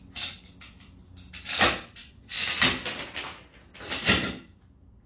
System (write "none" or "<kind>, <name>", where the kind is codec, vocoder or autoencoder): none